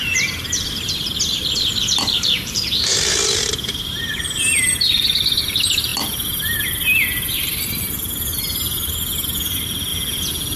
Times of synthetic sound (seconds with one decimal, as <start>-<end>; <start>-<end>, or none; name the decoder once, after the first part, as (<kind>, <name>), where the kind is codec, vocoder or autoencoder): 0.0-9.9 (vocoder, BigVGAN v2)